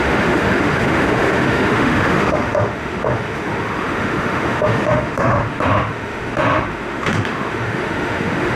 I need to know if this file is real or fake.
fake